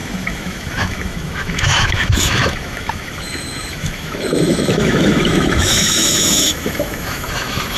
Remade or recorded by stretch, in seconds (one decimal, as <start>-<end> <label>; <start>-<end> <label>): 0.0-7.8 remade